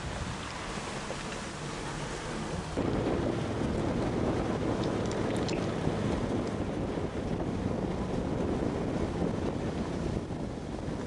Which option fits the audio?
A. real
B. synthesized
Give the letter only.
A